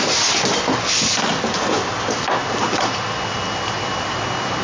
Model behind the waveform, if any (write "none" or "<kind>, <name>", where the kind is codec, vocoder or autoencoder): none